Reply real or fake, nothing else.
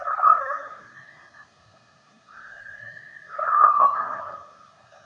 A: fake